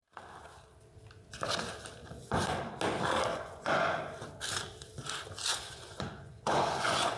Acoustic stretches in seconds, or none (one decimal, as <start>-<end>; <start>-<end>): 0.0-2.0; 2.7-3.3; 4.0-5.5